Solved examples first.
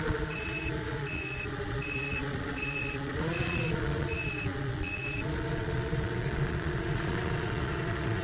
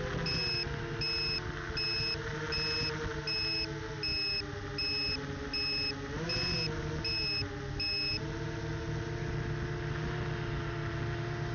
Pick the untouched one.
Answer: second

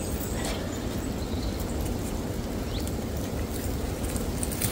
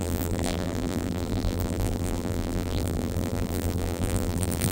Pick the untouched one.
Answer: first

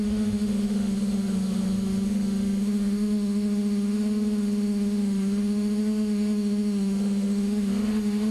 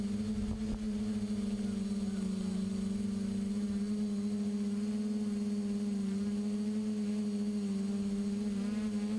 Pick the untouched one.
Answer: second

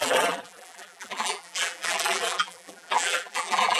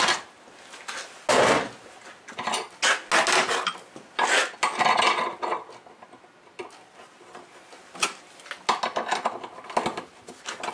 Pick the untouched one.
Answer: second